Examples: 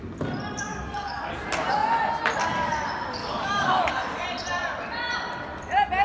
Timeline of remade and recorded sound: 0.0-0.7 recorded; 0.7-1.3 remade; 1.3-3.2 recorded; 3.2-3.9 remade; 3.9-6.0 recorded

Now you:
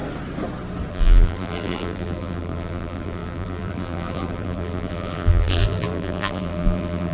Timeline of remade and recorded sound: 0.0-0.9 recorded; 0.9-7.1 remade